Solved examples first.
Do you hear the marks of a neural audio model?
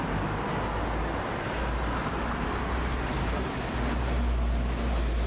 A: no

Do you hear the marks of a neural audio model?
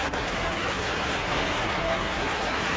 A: yes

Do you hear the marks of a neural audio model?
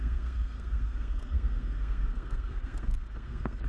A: yes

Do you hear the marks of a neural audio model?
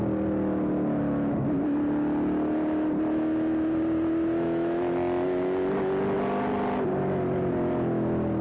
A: no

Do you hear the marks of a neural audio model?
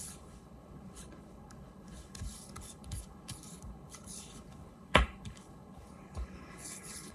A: yes